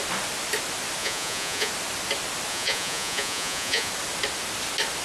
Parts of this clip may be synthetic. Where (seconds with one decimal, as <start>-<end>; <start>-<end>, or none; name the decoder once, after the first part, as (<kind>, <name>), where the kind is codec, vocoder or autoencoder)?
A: 1.0-1.7 (vocoder, Vocos); 2.5-3.9